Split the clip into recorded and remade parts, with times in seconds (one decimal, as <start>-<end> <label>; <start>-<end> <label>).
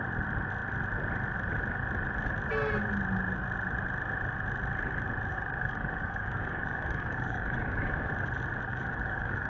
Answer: 0.0-5.3 recorded; 5.3-8.1 remade; 8.1-8.7 recorded; 8.7-9.5 remade